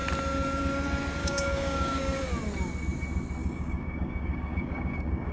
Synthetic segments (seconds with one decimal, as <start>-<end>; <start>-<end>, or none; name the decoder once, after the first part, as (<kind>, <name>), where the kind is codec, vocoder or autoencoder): 1.2-2.3 (codec, DAC); 3.4-5.3